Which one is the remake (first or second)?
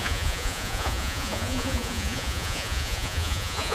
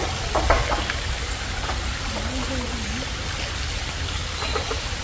first